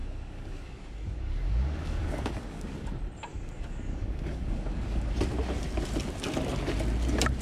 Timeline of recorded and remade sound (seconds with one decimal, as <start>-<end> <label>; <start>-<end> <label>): 0.0-2.9 remade; 2.9-3.3 recorded; 3.3-5.1 remade; 5.1-7.4 recorded